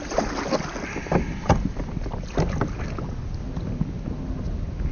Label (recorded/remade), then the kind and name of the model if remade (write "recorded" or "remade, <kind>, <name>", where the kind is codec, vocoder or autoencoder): recorded